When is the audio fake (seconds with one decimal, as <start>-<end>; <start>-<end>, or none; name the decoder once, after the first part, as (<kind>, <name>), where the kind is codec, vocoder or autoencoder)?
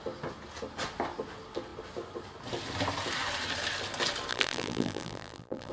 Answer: 4.3-5.7 (vocoder, BigVGAN v2)